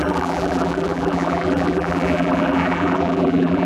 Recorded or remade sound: remade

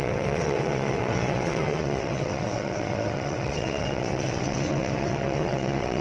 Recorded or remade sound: remade